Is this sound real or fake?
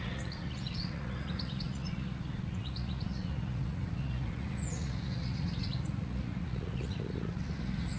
fake